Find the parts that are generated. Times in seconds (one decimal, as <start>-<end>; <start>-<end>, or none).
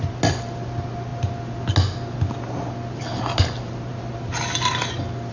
none